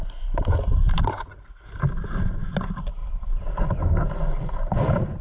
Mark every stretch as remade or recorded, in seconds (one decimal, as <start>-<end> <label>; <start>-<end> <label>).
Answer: 0.0-1.4 remade; 1.4-5.2 recorded